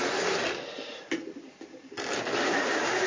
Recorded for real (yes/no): yes